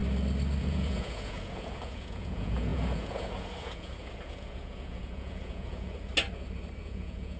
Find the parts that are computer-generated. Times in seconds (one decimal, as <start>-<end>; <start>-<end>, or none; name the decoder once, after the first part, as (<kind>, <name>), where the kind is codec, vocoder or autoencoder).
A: 0.6-6.1 (vocoder, Vocos); 6.8-7.4